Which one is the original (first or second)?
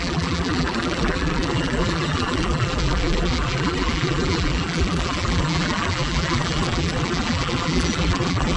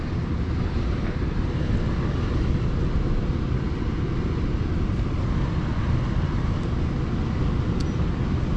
second